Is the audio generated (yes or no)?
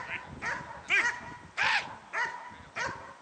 no